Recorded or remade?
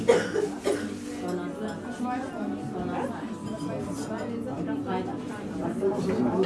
recorded